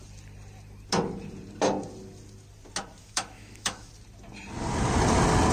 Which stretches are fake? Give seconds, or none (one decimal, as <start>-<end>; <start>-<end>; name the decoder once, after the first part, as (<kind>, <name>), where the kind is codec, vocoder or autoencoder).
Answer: 3.0-3.9 (autoencoder, DAC-VAE)